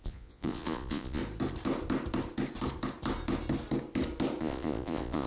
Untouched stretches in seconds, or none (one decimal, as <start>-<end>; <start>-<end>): 1.2-4.4